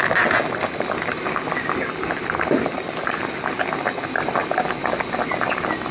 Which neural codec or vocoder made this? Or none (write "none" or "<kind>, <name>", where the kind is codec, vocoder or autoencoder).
none